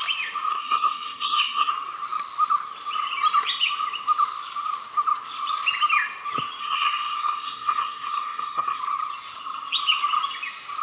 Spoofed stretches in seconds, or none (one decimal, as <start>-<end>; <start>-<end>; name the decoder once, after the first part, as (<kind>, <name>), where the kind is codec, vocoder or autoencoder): 0.5-1.7 (codec, SNAC); 6.6-8.8